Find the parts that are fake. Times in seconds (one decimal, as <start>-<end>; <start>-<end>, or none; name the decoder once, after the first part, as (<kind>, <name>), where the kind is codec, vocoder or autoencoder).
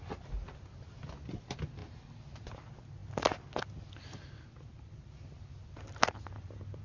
none